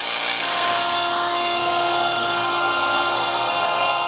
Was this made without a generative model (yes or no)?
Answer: no